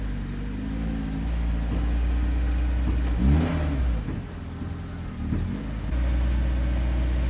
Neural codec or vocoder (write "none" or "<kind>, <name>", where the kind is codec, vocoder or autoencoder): none